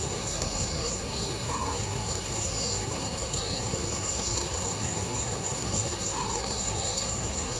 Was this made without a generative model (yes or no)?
no